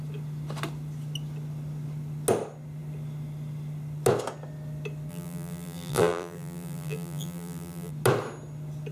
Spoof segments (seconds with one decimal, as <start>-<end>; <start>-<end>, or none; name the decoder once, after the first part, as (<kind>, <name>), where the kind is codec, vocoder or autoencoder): 5.1-7.9 (vocoder, BigVGAN v2)